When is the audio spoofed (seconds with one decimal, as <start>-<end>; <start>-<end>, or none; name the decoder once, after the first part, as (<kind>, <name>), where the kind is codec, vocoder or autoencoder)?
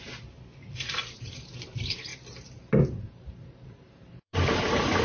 0.6-2.1 (vocoder, BigVGAN v2); 3.0-5.0